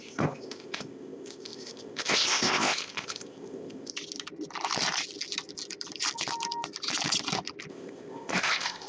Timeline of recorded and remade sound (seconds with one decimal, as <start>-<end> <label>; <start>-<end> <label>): 0.0-3.9 remade; 3.9-7.7 recorded; 7.7-8.9 remade